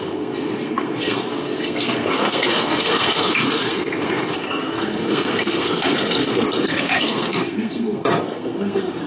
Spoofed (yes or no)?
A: yes